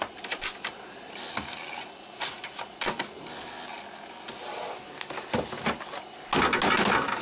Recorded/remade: recorded